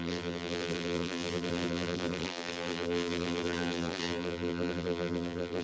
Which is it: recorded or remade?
remade